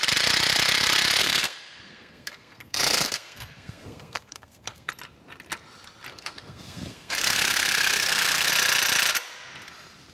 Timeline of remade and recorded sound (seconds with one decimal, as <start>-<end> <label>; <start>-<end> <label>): 0.0-1.2 recorded; 1.2-4.9 remade; 4.9-6.1 recorded; 6.1-8.5 remade; 8.5-10.1 recorded